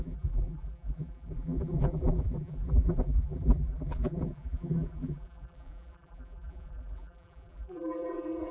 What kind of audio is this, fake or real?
fake